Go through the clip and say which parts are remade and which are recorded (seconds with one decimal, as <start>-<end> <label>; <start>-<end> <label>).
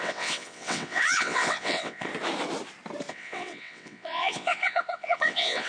0.0-2.1 remade; 2.1-3.1 recorded; 3.1-5.7 remade